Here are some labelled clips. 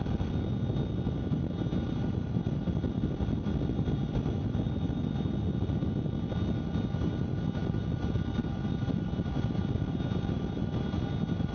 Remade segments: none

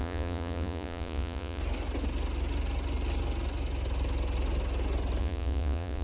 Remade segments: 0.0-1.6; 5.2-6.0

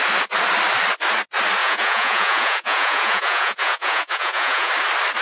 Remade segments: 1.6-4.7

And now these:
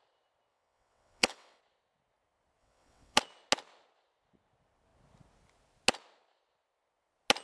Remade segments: 0.5-1.6; 2.6-3.2

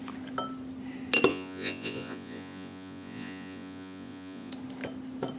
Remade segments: 1.3-4.5

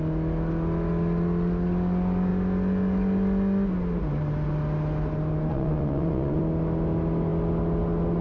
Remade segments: 5.5-6.4

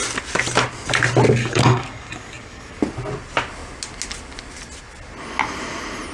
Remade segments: 1.4-2.8

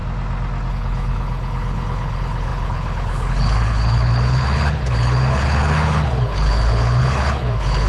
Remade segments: 0.7-7.9